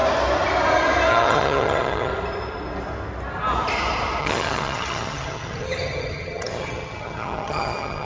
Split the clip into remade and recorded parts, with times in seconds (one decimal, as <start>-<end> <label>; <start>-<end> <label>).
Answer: 0.0-1.1 recorded; 1.1-2.1 remade; 2.1-4.2 recorded; 4.2-8.0 remade

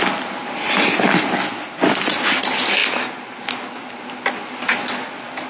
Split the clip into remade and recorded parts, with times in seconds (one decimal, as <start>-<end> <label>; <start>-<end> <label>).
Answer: 0.0-5.5 recorded

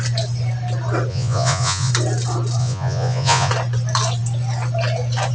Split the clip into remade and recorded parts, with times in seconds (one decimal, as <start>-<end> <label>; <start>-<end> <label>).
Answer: 0.0-1.1 recorded; 1.1-1.9 remade; 1.9-2.6 recorded; 2.6-3.5 remade; 3.5-5.3 recorded

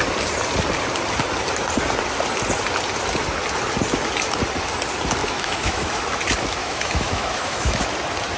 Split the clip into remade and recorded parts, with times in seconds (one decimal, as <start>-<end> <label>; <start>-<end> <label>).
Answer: 0.0-5.2 recorded; 5.2-6.0 remade; 6.0-6.6 recorded; 6.6-7.8 remade; 7.8-8.4 recorded

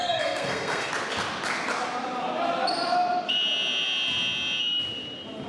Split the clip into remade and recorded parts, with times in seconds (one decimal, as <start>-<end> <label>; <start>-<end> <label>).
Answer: 0.0-0.9 remade; 0.9-5.5 recorded